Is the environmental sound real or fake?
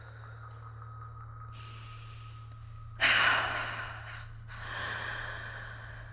real